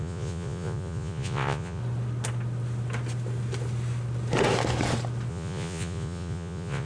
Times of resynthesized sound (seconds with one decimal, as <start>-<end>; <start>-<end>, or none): 0.0-1.8; 5.3-6.9